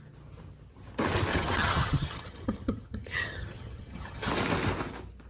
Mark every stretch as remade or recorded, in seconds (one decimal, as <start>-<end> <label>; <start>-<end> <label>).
0.0-1.3 recorded; 1.3-4.3 remade; 4.3-5.3 recorded